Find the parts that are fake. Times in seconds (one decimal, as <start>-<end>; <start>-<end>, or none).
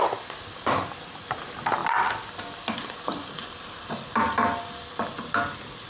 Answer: 1.8-4.6